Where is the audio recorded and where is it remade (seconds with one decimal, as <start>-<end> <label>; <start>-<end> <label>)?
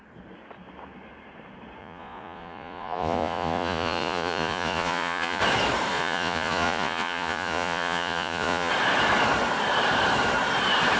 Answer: 0.0-1.8 recorded; 1.8-5.4 remade; 5.4-5.9 recorded; 5.9-8.7 remade; 8.7-11.0 recorded